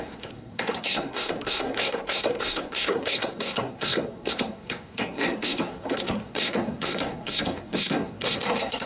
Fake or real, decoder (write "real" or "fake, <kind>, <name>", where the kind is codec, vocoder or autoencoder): fake, codec, SNAC